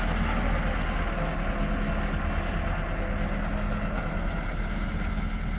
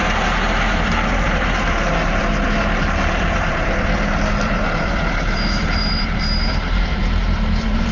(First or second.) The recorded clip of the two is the first